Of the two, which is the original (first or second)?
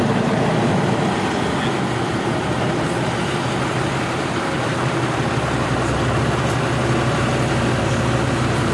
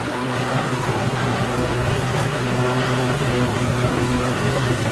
first